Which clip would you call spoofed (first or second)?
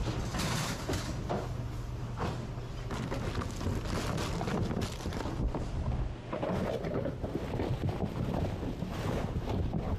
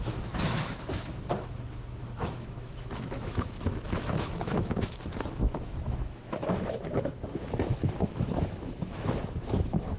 second